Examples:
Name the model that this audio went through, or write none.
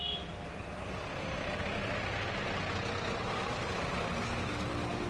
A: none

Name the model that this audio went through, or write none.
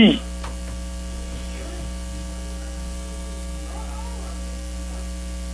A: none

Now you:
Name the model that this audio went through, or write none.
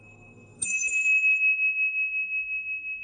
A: codec, SNAC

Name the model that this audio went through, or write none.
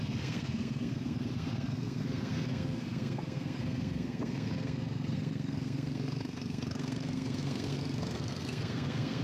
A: codec, SNAC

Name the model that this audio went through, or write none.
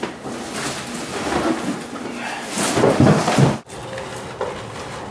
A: none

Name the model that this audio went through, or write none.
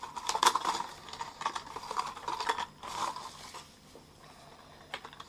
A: none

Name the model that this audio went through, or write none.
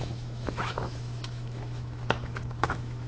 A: autoencoder, DAC-VAE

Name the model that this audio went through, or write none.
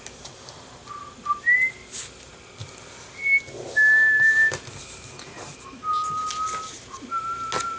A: none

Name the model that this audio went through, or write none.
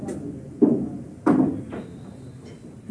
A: none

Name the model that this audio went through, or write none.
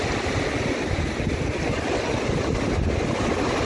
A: none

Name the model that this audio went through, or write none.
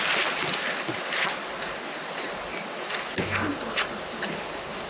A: none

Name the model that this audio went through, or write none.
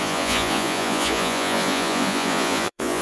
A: vocoder, Vocos